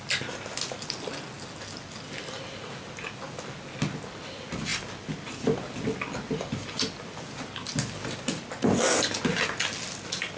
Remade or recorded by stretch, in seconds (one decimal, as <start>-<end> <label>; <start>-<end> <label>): 0.0-10.4 recorded